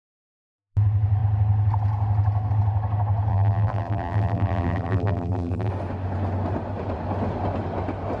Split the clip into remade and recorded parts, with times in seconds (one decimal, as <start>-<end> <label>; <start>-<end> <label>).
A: 0.0-3.3 recorded; 3.3-5.7 remade; 5.7-8.2 recorded